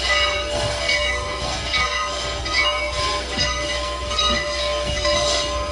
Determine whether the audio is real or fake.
fake